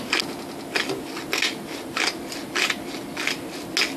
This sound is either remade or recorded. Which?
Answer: recorded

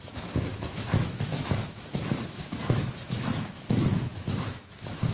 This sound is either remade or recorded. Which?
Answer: remade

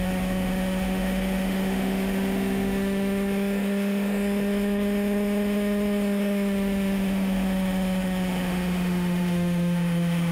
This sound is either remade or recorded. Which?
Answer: remade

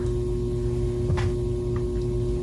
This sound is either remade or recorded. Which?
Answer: recorded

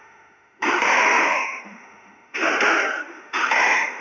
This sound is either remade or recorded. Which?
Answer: remade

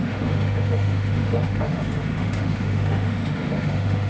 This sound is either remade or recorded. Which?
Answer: remade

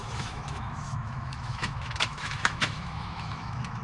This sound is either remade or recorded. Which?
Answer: remade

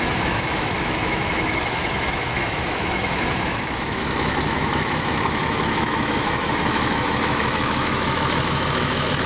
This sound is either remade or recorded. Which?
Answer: remade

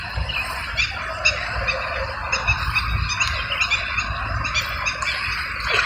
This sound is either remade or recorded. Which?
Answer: recorded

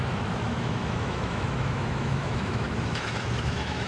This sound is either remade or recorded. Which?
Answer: remade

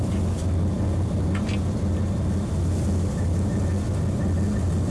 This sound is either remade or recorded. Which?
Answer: recorded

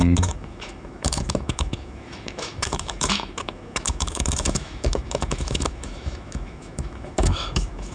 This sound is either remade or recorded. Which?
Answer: remade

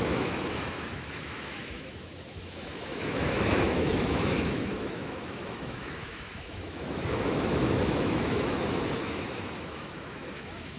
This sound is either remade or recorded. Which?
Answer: remade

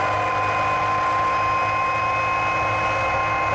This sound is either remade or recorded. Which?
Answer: recorded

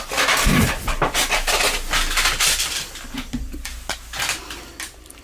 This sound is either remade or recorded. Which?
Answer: recorded